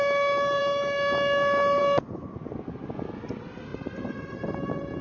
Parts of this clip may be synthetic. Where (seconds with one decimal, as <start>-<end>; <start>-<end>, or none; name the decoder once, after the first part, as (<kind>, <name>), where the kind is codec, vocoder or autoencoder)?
3.7-5.0 (vocoder, BigVGAN v2)

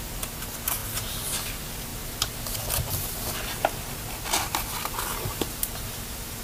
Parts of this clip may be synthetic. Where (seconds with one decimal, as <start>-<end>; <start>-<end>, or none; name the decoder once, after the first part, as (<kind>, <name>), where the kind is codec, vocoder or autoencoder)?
none

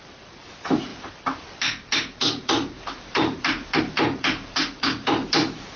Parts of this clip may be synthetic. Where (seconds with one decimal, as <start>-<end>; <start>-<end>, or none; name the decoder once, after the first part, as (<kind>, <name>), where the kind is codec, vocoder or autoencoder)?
0.0-5.8 (vocoder, BigVGAN v2)

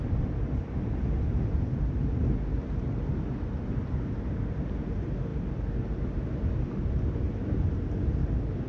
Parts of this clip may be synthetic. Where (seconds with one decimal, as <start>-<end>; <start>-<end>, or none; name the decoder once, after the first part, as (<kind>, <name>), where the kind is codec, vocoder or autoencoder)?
none

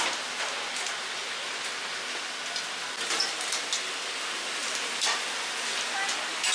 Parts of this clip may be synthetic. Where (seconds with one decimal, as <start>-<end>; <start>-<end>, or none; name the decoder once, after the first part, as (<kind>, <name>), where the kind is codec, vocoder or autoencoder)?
4.6-5.1 (vocoder, BigVGAN v2)